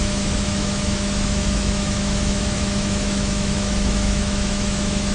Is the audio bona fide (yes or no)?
no